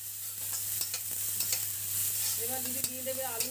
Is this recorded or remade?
recorded